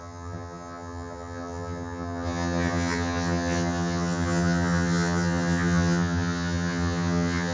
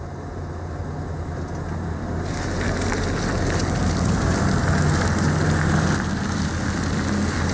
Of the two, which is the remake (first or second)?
first